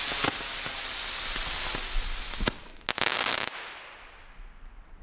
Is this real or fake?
real